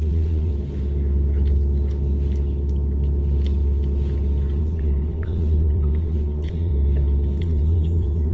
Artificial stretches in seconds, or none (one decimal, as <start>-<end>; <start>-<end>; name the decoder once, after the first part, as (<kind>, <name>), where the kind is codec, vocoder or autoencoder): 0.0-0.5 (vocoder, WaveNeXt); 4.6-6.7; 7.4-8.3